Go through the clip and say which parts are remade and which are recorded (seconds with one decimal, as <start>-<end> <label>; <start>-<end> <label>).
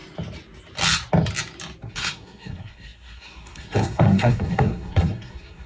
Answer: 0.0-1.9 recorded; 1.9-5.7 remade